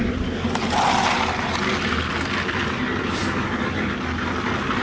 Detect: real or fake real